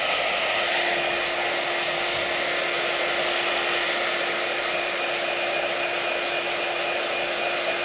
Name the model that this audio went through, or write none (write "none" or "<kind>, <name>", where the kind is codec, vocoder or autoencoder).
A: none